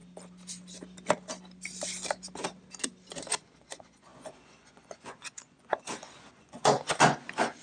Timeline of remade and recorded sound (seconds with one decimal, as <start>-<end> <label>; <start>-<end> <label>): 0.0-3.3 recorded; 3.3-7.6 remade